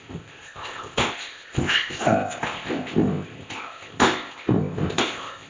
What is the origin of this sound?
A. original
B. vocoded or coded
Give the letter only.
B